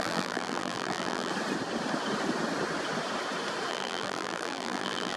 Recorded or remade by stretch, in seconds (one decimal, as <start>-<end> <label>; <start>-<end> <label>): 0.0-1.3 remade; 1.3-3.7 recorded; 3.7-5.2 remade